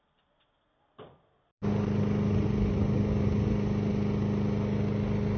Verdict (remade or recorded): recorded